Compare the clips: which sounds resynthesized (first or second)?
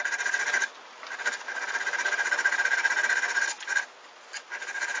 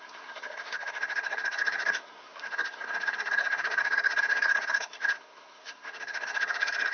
second